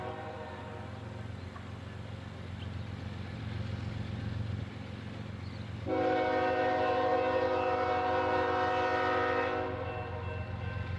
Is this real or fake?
real